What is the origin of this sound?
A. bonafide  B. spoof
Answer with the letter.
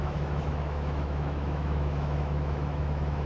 B